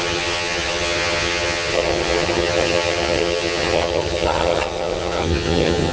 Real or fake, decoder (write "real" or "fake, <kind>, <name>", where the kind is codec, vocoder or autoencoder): fake, vocoder, HiFi-GAN